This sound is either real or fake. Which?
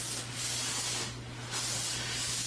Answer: real